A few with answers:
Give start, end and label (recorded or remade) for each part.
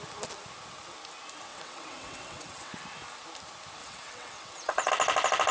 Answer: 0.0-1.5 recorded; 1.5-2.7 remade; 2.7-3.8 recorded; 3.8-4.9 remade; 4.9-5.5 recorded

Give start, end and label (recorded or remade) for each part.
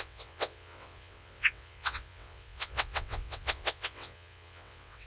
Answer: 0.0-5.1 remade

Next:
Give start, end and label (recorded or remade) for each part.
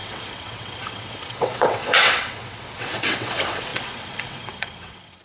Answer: 0.0-5.2 remade